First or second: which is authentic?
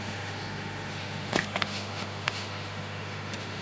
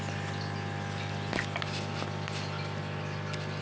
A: second